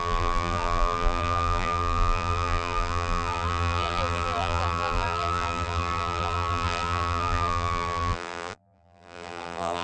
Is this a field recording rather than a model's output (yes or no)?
no